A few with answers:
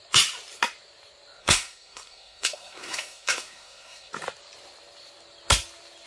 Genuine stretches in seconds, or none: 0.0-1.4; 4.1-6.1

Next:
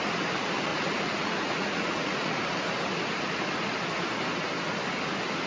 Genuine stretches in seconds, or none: 0.0-0.7; 2.5-5.5